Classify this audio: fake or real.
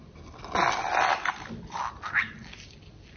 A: real